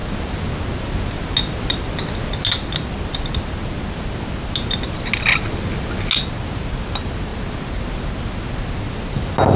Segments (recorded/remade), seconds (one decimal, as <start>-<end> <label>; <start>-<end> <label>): 0.0-9.6 recorded